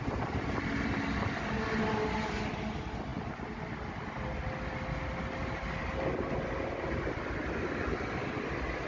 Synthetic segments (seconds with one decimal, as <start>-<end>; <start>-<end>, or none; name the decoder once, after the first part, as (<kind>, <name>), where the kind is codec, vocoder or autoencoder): none